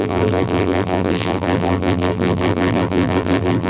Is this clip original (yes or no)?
no